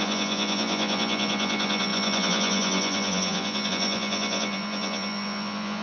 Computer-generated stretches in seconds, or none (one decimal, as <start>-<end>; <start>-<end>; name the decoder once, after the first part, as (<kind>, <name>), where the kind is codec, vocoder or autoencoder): 0.0-5.8 (vocoder, Vocos)